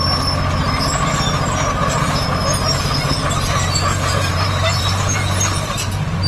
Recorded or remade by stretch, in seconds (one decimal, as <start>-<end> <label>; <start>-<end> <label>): 0.0-3.9 recorded; 3.9-6.3 remade